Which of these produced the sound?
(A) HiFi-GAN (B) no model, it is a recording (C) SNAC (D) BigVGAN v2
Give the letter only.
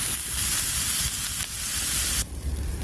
B